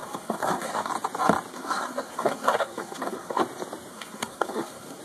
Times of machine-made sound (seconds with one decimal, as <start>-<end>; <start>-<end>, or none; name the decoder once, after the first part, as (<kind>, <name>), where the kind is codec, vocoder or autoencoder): 0.0-0.9 (codec, SNAC); 1.5-3.4; 3.9-5.0